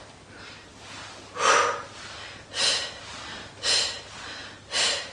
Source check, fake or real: real